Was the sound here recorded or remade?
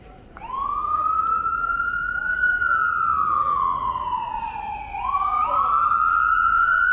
remade